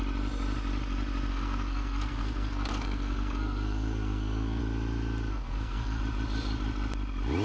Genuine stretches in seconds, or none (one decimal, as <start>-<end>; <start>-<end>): 0.0-1.3; 4.6-5.3; 6.0-7.4